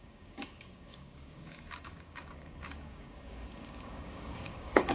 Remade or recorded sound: remade